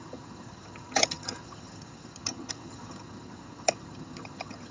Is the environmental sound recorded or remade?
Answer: remade